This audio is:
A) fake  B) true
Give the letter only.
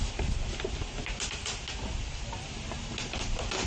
B